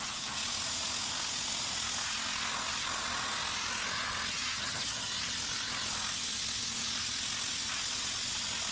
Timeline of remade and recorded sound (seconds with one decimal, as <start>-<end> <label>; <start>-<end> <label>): 0.0-0.4 remade; 0.4-4.3 recorded; 4.3-5.1 remade; 5.1-8.7 recorded